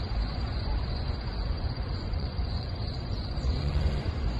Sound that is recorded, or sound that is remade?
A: remade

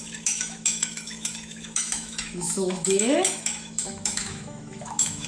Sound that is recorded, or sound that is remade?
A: remade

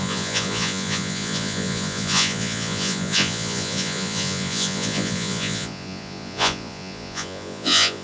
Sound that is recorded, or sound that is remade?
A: remade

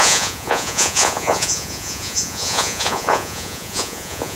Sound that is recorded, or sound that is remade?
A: remade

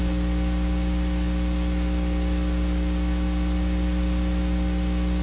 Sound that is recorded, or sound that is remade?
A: recorded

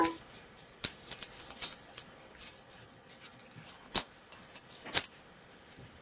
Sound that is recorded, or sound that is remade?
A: remade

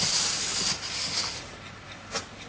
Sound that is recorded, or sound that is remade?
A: recorded